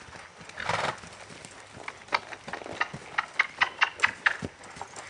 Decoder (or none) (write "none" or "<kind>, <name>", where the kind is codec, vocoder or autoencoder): none